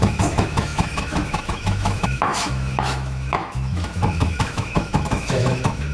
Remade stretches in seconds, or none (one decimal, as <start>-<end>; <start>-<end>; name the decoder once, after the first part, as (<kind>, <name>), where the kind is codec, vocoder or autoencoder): 0.0-5.9 (autoencoder, DAC-VAE)